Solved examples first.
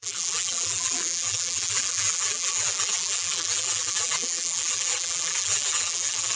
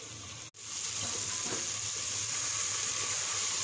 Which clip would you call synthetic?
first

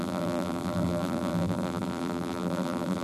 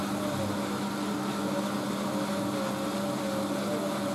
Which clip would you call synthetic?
first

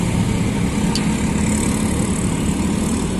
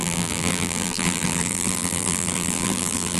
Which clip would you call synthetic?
second